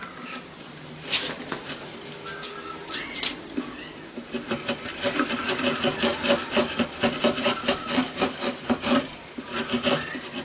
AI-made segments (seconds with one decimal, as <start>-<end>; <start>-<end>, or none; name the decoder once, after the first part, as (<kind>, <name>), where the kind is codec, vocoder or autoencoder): none